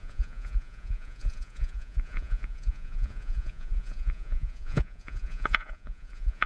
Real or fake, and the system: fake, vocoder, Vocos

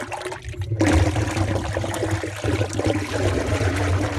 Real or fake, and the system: real